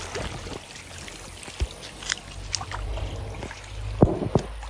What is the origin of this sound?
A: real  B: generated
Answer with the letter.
A